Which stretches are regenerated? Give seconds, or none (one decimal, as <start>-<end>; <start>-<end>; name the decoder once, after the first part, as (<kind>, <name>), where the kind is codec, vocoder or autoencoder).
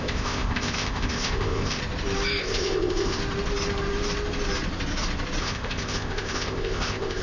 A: 0.0-1.8 (codec, ZipCodec); 2.4-3.2; 5.4-7.2